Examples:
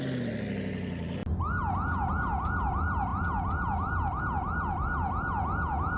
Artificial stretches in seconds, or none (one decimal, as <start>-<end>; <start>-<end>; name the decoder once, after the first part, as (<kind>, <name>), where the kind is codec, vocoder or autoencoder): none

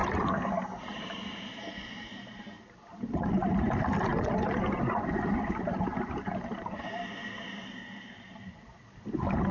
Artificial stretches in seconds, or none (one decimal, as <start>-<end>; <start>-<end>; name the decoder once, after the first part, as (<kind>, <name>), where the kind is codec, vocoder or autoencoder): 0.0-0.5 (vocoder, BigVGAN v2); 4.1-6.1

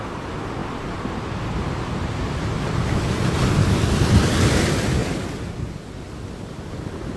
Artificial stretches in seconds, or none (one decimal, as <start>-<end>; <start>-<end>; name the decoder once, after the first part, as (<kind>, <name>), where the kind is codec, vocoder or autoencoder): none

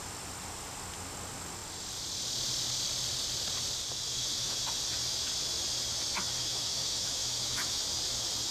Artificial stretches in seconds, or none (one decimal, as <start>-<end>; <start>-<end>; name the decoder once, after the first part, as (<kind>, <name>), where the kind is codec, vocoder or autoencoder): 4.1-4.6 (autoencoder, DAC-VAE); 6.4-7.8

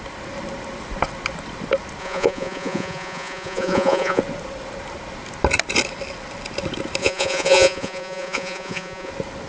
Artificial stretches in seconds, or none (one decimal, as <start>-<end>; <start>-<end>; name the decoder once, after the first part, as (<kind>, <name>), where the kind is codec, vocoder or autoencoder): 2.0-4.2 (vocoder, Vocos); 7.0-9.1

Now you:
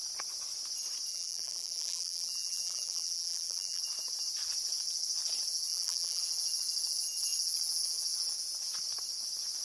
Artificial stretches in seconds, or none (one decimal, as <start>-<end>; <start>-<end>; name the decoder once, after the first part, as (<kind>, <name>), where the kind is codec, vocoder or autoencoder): 1.1-3.8 (vocoder, BigVGAN v2); 5.7-6.2